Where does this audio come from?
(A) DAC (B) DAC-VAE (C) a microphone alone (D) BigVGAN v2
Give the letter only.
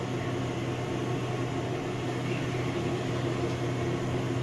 C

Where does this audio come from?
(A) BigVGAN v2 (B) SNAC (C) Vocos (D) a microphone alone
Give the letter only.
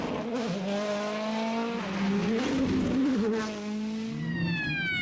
D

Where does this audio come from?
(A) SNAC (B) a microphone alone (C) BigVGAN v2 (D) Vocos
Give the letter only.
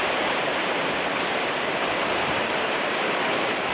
C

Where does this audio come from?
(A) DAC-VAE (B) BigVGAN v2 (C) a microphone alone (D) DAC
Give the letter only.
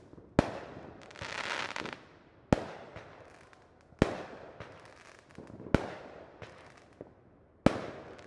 C